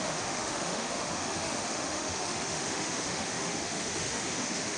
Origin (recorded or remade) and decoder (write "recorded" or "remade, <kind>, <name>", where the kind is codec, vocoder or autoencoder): remade, autoencoder, DAC-VAE